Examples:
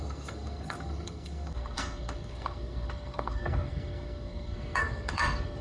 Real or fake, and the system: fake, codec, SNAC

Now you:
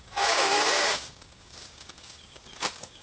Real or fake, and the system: fake, codec, DAC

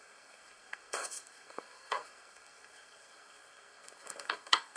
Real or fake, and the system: fake, codec, SNAC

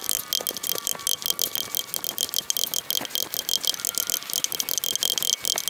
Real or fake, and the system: real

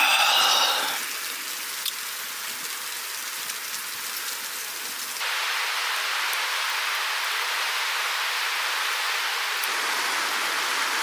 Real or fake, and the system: real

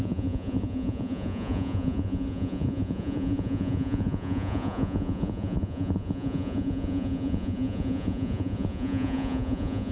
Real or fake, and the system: fake, vocoder, Vocos